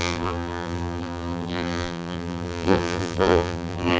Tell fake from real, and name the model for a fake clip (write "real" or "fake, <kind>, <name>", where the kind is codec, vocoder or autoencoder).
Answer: fake, vocoder, BigVGAN v2